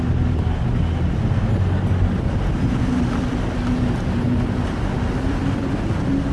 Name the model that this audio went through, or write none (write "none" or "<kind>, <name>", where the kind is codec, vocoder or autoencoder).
none